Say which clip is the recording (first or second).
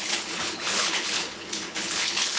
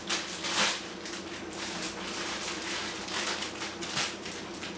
second